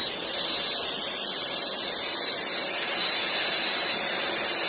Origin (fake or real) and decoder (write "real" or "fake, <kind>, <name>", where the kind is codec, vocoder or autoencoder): fake, vocoder, BigVGAN v2